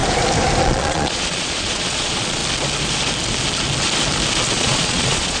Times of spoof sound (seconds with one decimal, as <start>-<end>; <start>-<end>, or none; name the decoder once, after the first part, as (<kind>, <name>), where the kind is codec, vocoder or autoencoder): 0.6-2.4 (vocoder, Vocos); 4.5-5.4